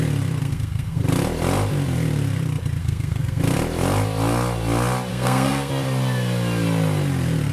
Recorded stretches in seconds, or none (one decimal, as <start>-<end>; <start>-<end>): 0.0-0.4; 1.0-2.8; 3.4-5.1; 5.7-7.5